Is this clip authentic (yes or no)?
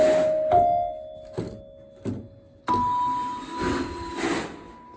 yes